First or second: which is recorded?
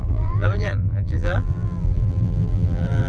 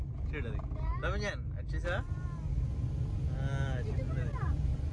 second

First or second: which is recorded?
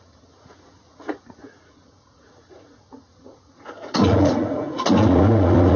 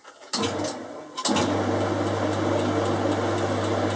second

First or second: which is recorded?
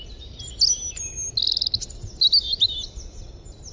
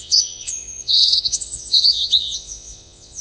first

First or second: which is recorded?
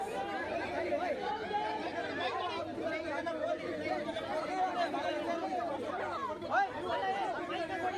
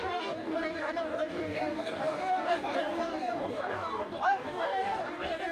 first